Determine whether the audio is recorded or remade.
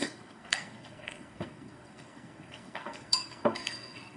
remade